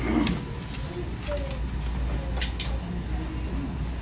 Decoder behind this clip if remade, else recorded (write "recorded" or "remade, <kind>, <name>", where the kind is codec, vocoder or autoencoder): recorded